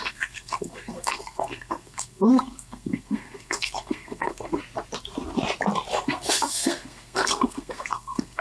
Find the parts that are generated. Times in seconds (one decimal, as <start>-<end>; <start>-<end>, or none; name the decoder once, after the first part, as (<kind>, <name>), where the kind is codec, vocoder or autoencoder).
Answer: 0.0-4.6 (codec, SNAC); 5.9-8.4